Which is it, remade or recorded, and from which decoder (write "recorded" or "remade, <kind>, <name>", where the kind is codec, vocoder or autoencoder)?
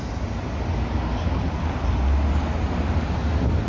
recorded